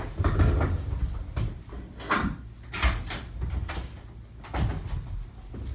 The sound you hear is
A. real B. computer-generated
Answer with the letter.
A